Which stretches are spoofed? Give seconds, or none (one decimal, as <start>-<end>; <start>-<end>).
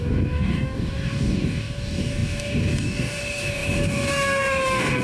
0.0-5.0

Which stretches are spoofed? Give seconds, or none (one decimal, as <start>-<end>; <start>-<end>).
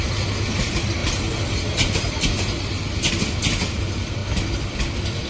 none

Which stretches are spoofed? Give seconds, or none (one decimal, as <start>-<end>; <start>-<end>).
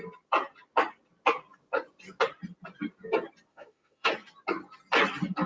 3.5-4.1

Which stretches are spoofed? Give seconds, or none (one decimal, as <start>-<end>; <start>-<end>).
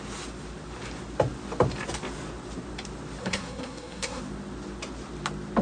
3.2-4.2